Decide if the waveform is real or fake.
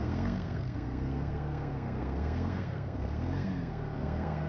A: fake